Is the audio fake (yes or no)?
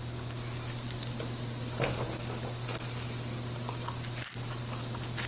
no